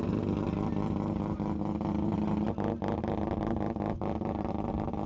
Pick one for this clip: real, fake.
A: real